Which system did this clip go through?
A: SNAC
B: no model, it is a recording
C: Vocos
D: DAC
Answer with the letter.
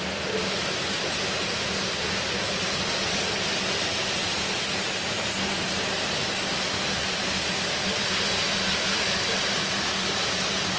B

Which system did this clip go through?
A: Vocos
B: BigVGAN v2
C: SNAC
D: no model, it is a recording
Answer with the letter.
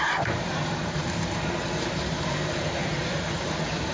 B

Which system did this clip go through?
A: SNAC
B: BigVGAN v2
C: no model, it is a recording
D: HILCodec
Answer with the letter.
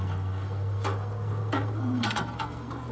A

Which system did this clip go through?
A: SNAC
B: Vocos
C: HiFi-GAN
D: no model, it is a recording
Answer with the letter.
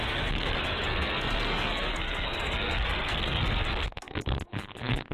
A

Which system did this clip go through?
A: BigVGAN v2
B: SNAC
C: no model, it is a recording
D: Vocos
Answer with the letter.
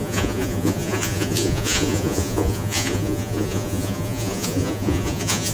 D